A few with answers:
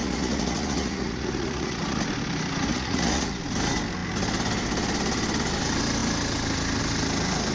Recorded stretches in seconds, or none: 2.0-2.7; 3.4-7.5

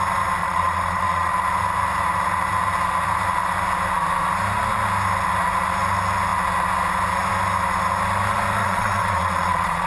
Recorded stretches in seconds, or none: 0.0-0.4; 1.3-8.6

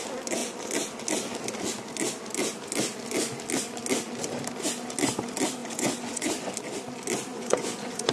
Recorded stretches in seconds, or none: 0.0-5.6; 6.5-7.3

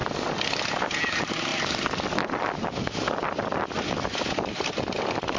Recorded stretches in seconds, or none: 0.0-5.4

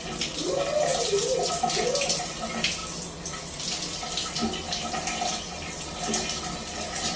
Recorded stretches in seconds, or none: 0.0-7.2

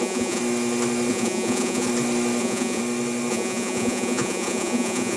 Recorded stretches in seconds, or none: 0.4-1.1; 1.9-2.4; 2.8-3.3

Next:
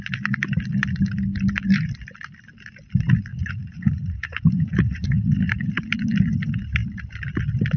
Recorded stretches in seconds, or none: 0.0-3.3; 5.9-7.8

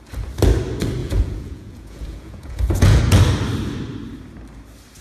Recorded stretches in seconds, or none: 0.0-1.0; 3.0-5.0